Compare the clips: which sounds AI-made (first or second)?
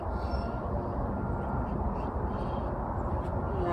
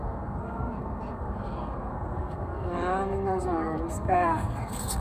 second